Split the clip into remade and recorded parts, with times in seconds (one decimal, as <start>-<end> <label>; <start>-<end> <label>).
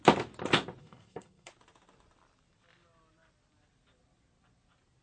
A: 0.0-0.8 recorded; 0.8-1.5 remade; 1.5-5.0 recorded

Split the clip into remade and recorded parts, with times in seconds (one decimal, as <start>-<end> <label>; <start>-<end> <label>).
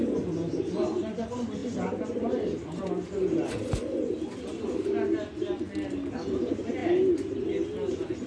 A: 0.0-8.3 recorded